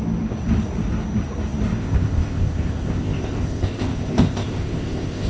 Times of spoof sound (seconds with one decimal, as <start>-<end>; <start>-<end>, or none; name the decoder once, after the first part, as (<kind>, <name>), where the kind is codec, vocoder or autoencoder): 1.8-5.3 (codec, ZipCodec)